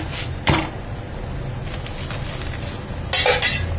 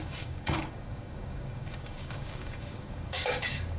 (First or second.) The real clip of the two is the first